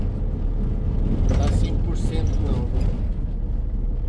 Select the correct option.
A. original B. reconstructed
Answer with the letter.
A